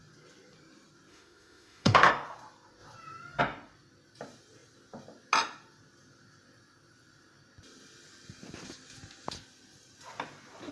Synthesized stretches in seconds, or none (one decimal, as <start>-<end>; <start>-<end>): 1.1-2.1

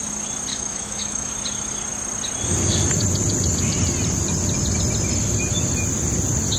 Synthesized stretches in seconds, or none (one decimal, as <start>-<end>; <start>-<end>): 0.5-1.3

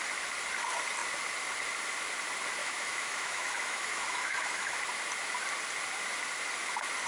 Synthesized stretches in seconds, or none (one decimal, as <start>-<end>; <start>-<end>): 2.6-4.8